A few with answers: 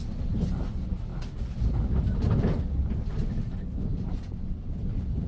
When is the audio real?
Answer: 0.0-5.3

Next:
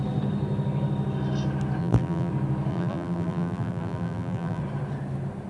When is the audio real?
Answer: 0.0-1.8; 2.3-2.7; 4.6-5.5

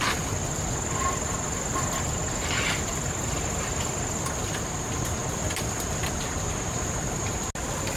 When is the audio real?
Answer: 0.0-8.0